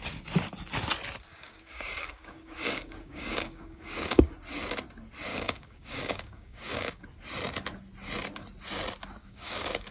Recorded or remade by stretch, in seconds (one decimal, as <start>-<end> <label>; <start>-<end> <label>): 0.0-1.3 recorded; 1.3-4.3 remade; 4.3-5.3 recorded; 5.3-7.0 remade; 7.0-9.2 recorded; 9.2-9.9 remade